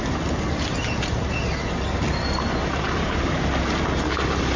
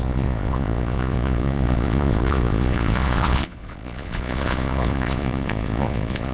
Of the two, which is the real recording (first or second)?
first